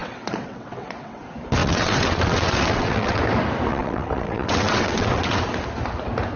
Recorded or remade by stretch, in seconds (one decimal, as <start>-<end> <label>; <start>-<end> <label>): 0.0-1.2 remade; 1.2-1.6 recorded; 1.6-3.2 remade; 3.2-3.7 recorded; 3.7-5.4 remade; 5.4-6.4 recorded